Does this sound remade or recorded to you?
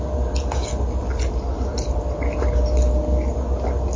recorded